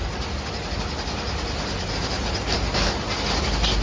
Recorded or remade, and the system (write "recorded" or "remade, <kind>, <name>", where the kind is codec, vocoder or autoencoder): recorded